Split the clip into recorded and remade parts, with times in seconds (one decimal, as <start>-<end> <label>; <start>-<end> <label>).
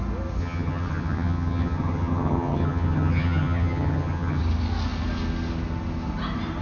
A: 0.0-0.4 recorded; 0.4-4.4 remade; 4.4-6.6 recorded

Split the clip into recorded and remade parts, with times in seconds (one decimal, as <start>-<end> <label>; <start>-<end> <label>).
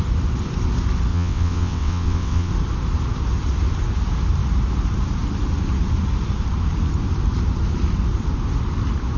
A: 0.0-1.1 recorded; 1.1-2.5 remade; 2.5-9.2 recorded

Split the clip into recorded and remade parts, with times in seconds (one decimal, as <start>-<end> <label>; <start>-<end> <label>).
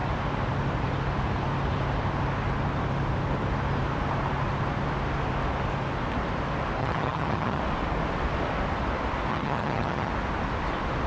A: 0.0-6.8 recorded; 6.8-7.6 remade; 7.6-9.3 recorded; 9.3-10.1 remade; 10.1-11.1 recorded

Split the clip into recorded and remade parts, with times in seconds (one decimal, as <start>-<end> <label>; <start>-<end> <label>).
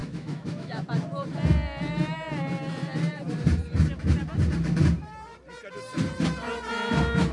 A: 0.0-0.8 remade; 0.8-7.3 recorded